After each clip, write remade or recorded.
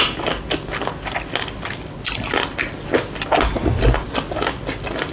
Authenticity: recorded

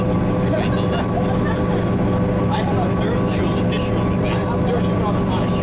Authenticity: recorded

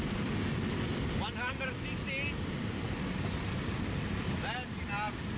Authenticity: recorded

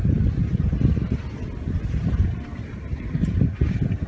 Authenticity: remade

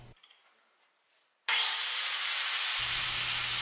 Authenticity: recorded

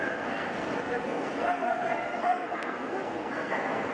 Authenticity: remade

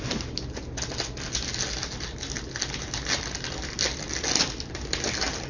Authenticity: recorded